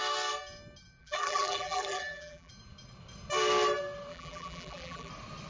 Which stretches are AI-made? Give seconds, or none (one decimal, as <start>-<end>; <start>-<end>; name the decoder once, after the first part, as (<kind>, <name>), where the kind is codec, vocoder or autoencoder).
1.0-2.5 (vocoder, BigVGAN v2); 4.1-5.1